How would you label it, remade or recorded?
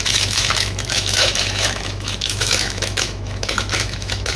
remade